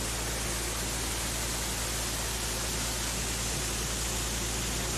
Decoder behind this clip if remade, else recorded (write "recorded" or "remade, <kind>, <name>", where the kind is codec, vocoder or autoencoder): recorded